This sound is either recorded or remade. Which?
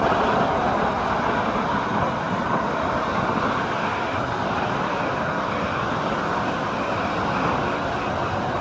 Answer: recorded